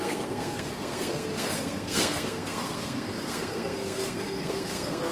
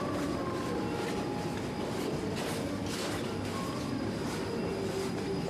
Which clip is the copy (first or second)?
first